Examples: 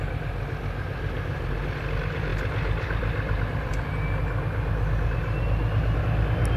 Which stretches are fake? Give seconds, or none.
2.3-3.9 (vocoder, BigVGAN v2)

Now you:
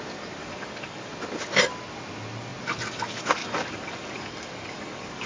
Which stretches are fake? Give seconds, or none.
0.4-1.1 (codec, DAC); 3.4-5.3

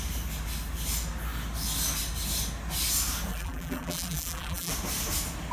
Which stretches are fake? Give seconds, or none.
3.3-4.7 (vocoder, BigVGAN v2)

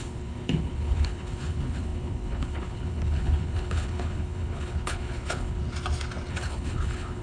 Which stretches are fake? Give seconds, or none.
0.0-5.6 (codec, HILCodec); 6.3-7.2

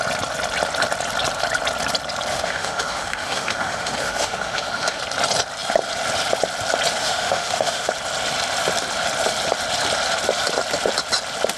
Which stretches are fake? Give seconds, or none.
2.3-5.0 (autoencoder, DAC-VAE); 7.0-7.9

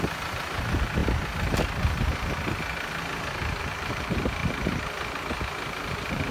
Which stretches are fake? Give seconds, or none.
0.0-1.0 (vocoder, BigVGAN v2); 3.6-4.4; 5.8-6.3

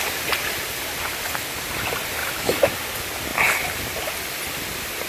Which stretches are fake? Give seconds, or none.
2.2-2.7 (autoencoder, DAC-VAE)

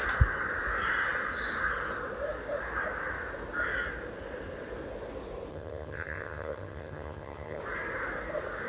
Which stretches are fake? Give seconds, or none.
5.5-7.6 (vocoder, HiFi-GAN)